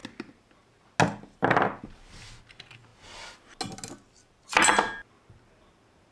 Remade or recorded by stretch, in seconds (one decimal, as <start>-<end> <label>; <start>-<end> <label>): 0.0-6.1 recorded